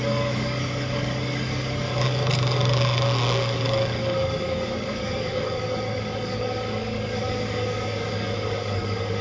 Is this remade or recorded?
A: remade